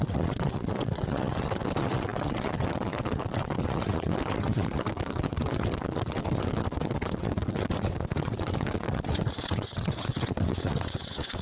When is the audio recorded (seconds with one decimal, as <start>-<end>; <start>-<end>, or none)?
none